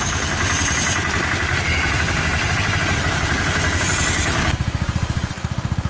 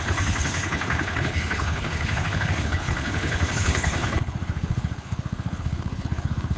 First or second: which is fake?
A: second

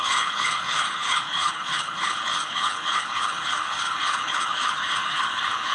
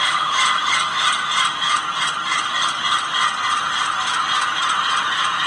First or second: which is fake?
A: first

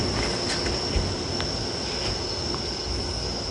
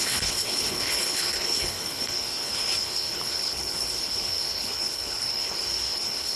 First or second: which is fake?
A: second